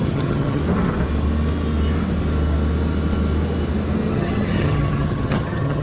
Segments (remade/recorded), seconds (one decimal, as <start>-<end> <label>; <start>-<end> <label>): 0.0-0.6 remade; 0.6-4.1 recorded; 4.1-5.8 remade